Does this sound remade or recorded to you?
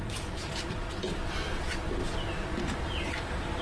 recorded